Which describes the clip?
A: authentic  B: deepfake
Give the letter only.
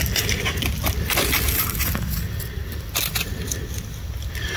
A